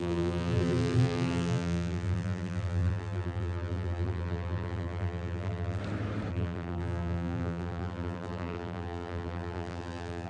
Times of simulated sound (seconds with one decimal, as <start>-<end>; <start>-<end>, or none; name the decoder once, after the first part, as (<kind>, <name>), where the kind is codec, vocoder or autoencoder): 0.0-5.8 (vocoder, BigVGAN v2); 6.3-10.3